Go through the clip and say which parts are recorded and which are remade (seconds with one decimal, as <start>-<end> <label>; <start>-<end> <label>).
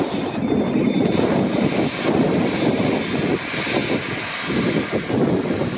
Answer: 0.0-5.8 recorded